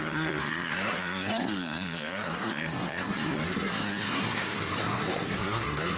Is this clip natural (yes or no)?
no